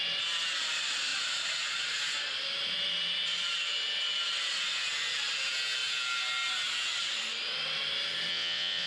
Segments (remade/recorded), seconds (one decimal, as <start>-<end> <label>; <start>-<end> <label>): 0.0-8.3 recorded; 8.3-8.9 remade